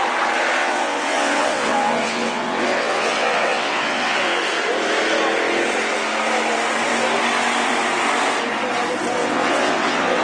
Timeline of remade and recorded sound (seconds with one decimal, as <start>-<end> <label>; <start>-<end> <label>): 0.0-0.6 recorded; 0.6-4.4 remade; 4.4-9.2 recorded; 9.2-10.2 remade